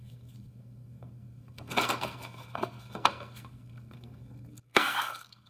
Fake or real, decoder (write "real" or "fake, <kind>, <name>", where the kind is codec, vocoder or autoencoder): fake, codec, SNAC